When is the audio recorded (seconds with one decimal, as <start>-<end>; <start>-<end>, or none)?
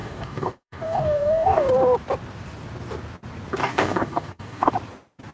1.7-3.6; 4.7-5.3